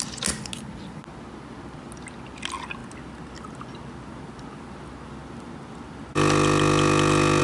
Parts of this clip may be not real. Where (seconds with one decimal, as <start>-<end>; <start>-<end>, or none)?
none